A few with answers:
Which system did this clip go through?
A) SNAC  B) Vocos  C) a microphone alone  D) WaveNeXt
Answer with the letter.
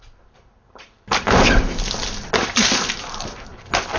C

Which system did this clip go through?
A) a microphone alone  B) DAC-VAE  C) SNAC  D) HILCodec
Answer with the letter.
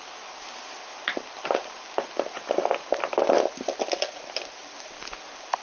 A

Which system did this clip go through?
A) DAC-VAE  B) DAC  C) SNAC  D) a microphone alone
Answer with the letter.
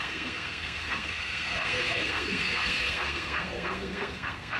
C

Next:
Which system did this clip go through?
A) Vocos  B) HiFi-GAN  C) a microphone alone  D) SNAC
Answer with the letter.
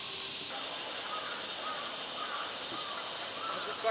C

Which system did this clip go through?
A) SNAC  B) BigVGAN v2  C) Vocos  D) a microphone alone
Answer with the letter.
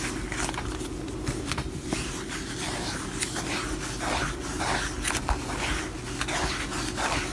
D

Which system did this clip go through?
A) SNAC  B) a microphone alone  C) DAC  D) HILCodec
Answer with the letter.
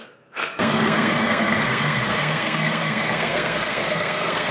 A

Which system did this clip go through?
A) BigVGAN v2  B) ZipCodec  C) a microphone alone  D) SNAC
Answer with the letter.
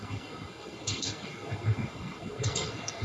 D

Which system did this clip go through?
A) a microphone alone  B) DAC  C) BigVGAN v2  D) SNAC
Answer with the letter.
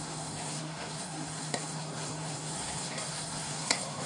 D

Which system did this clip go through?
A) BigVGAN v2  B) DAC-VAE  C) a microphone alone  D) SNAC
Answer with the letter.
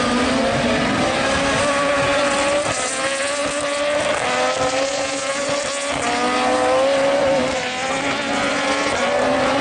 C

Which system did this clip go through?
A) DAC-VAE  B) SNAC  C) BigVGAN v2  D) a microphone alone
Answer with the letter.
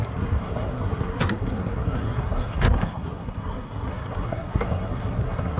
B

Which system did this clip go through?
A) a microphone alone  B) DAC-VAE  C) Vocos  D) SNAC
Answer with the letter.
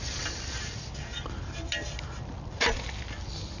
A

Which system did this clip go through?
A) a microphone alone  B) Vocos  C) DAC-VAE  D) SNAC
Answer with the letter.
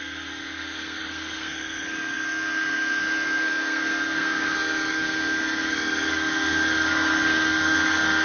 D